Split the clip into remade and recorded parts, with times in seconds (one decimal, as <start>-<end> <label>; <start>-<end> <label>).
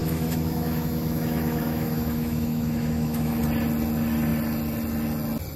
0.0-3.4 remade; 3.4-5.6 recorded